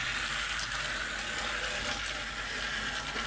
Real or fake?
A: real